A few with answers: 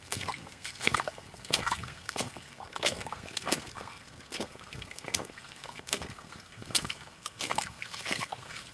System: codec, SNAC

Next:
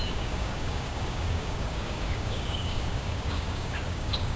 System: codec, DAC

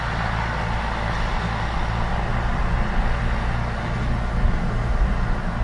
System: none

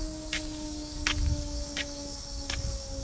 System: codec, DAC